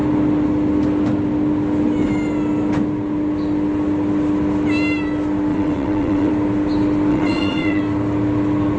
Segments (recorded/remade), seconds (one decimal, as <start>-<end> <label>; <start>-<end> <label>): 0.0-5.5 recorded; 5.5-6.3 remade; 6.3-7.1 recorded; 7.1-7.8 remade; 7.8-8.8 recorded